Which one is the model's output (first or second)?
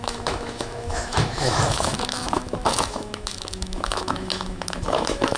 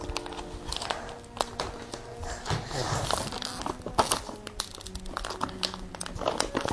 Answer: first